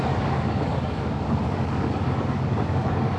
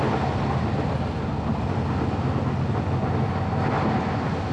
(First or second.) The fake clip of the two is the first